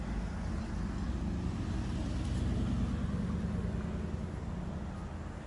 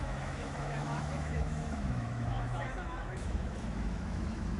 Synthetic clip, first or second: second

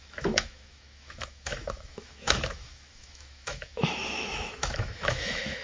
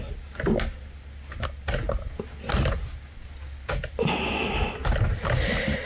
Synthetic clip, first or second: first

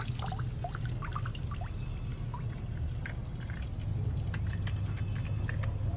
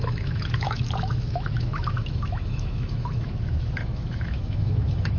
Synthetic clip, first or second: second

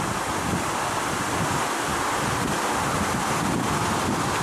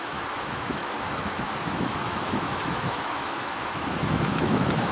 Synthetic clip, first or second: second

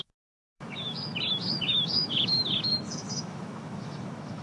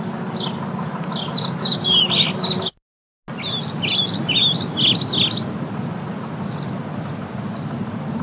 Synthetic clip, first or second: first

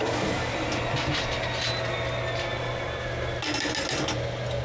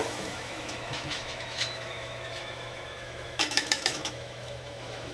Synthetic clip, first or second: second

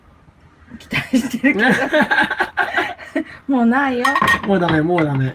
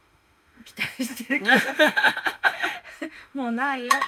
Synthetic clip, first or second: second